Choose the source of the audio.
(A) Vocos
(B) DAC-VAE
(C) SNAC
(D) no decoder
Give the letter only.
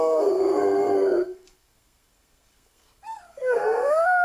C